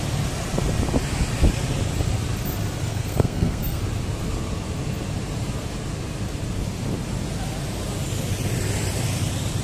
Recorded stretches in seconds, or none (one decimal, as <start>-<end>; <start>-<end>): 0.0-2.9; 3.8-9.6

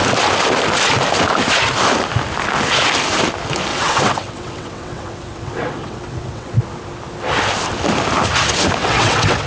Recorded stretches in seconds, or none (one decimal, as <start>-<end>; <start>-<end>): 0.0-3.7; 6.6-8.8